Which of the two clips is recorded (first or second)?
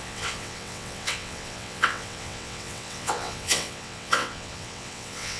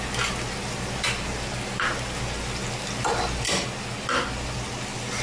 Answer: second